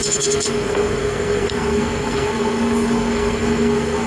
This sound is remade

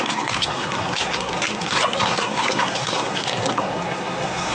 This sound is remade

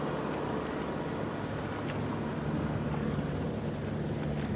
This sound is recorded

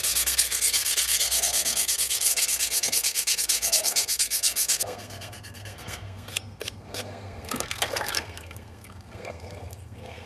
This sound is remade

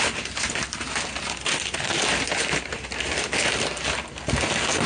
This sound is recorded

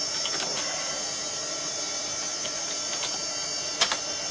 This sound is recorded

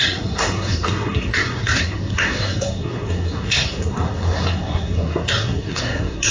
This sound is remade